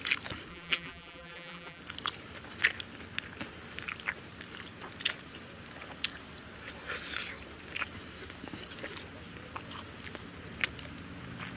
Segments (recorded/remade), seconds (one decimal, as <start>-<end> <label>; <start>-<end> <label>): 0.0-0.5 recorded; 0.5-1.8 remade; 1.8-11.6 recorded